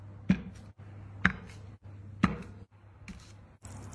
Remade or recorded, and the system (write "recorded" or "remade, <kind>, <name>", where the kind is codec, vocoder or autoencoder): recorded